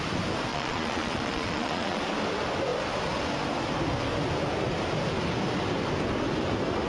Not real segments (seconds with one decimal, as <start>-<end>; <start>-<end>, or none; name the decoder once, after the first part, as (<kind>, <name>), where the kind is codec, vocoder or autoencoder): 0.5-2.0 (vocoder, Vocos)